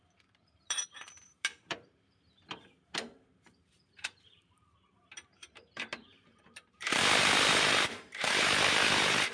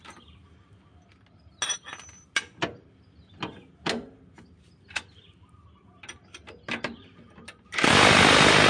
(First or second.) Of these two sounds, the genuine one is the second